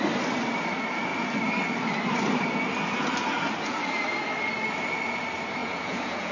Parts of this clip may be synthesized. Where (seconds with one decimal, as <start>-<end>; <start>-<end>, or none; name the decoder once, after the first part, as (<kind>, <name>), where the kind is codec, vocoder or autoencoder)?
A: 5.6-6.3 (vocoder, Vocos)